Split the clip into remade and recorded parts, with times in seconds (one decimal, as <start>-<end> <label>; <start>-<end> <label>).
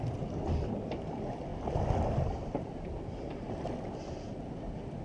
0.0-5.0 recorded